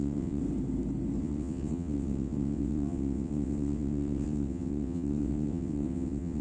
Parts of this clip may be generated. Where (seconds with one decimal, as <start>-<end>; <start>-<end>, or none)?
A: 0.0-0.4; 1.2-6.4

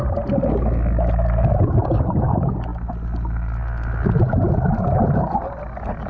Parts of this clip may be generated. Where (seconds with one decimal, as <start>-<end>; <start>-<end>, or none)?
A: none

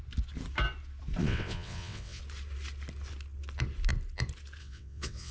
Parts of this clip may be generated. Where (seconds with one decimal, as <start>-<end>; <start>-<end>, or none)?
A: 1.2-2.2; 4.6-5.3

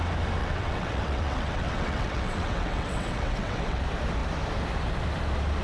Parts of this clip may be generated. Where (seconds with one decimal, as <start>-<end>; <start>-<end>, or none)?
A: 0.4-3.8

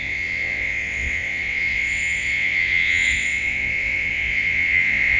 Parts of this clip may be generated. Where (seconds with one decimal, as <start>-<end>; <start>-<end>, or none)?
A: 0.0-5.2

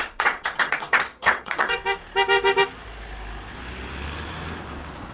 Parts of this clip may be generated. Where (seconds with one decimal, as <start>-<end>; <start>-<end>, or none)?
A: 0.0-1.8

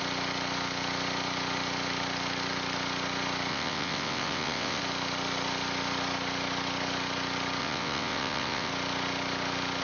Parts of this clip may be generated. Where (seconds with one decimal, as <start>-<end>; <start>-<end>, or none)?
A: 3.5-4.8; 7.6-8.7

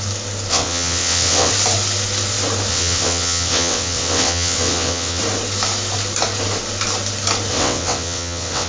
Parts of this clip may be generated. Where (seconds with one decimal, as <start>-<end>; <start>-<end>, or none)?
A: 0.5-1.5; 2.7-5.2; 7.5-8.7